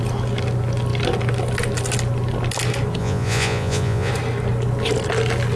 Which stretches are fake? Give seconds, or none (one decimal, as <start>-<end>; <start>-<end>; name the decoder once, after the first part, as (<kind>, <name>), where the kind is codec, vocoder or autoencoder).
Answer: 3.0-4.1 (vocoder, Vocos)